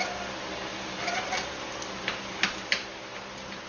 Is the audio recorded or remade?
recorded